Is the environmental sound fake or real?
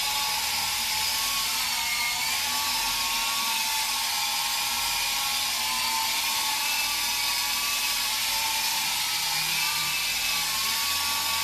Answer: real